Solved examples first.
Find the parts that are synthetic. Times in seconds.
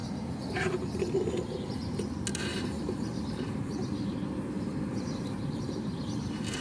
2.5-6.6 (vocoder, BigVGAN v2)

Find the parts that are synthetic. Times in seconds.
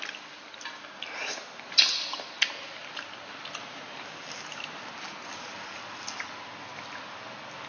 none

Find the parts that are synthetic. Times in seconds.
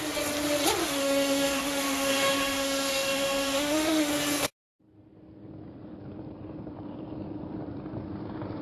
0.8-4.1 (autoencoder, DAC-VAE)